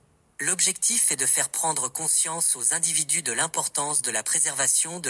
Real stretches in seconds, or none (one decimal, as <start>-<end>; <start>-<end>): 0.0-5.1